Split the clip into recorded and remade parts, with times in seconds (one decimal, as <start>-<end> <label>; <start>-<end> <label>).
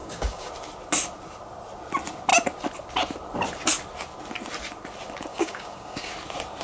0.0-0.5 remade; 0.5-5.3 recorded; 5.3-6.1 remade; 6.1-6.6 recorded